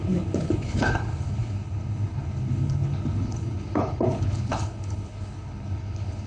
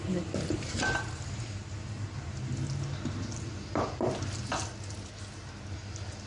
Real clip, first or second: second